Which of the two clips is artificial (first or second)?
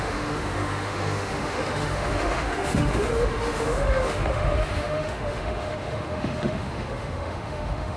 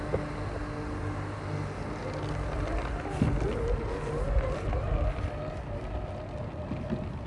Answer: first